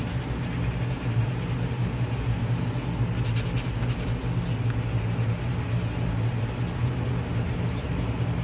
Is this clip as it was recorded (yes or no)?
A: yes